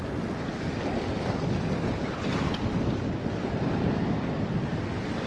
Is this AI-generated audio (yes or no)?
no